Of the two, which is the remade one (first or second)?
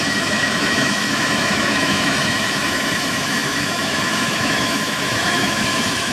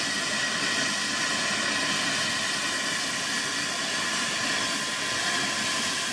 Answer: first